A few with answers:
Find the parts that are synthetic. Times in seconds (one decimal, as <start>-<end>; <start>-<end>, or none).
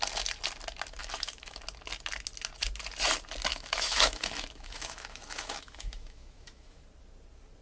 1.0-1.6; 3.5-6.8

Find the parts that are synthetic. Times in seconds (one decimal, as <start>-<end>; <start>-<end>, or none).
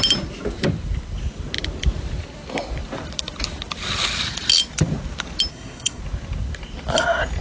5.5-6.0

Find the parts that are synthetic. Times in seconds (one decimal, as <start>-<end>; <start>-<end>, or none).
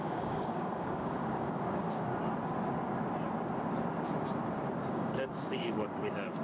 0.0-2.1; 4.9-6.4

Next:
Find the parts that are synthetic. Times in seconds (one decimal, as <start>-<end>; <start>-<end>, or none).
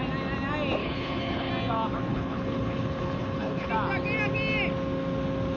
0.8-1.5; 2.1-3.7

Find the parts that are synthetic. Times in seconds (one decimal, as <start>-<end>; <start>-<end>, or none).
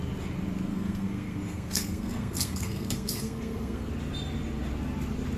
0.7-3.9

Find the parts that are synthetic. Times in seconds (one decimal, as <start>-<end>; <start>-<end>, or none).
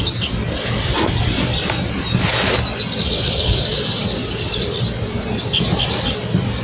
3.7-4.2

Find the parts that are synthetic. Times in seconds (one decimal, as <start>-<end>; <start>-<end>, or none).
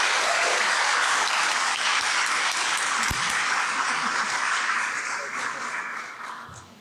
0.0-6.8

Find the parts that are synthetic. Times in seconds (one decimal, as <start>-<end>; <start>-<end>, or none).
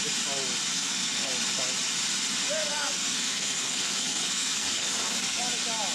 0.7-1.3; 2.7-5.4